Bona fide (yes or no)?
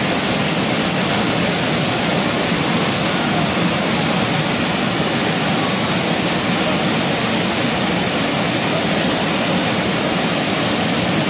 yes